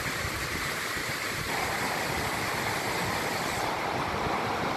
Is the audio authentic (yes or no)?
yes